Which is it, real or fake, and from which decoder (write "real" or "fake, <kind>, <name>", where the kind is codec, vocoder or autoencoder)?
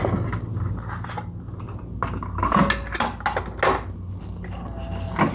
real